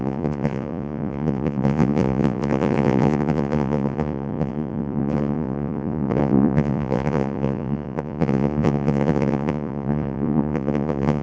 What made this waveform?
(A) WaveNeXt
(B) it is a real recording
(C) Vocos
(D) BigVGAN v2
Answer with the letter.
C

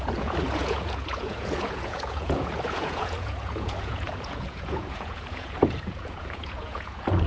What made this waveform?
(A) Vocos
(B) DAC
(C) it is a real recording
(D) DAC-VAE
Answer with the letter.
A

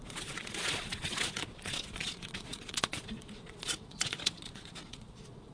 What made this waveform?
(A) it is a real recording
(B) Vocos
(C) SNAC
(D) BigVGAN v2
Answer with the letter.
B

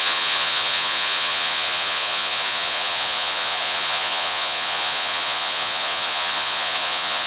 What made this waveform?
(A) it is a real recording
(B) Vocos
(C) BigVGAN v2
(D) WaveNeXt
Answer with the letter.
B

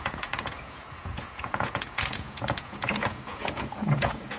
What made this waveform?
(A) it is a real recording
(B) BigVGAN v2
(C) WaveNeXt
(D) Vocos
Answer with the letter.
D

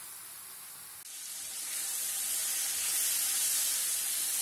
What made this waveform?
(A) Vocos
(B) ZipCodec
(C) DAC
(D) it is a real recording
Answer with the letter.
D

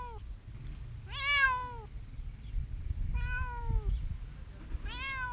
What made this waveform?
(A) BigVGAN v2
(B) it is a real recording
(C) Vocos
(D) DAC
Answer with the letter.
B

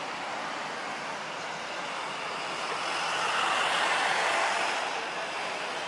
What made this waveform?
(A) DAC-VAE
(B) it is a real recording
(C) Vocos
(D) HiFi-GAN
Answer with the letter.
B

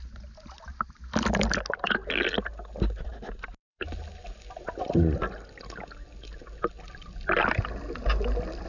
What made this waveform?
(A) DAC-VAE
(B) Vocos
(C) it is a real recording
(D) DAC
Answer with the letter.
C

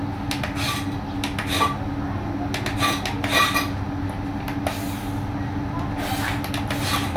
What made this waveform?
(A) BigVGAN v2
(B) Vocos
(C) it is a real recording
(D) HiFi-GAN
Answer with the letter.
C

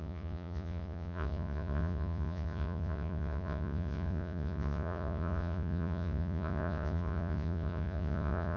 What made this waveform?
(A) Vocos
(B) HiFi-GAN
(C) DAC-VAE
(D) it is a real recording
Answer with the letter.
A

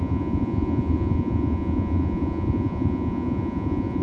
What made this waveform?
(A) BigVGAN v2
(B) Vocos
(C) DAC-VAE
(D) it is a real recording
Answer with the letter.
B